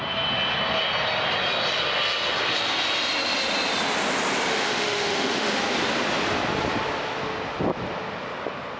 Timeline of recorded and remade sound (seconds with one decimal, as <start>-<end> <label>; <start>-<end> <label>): 0.0-4.5 recorded; 4.5-5.6 remade; 5.6-8.8 recorded